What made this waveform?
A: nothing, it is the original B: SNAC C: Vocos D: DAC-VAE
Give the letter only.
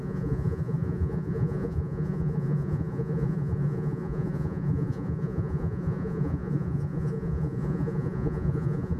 C